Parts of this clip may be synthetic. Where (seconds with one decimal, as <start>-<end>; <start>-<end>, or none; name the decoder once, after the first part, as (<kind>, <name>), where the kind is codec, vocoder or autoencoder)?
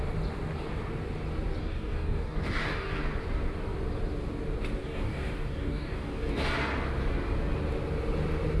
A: 1.6-3.0 (codec, DAC); 4.8-6.4